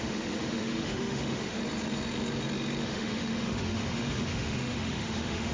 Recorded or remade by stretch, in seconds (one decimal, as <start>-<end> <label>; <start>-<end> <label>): 0.0-1.6 remade; 1.6-2.8 recorded; 2.8-5.5 remade